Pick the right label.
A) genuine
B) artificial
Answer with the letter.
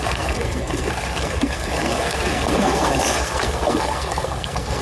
B